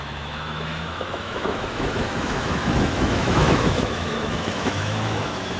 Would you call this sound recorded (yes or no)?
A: no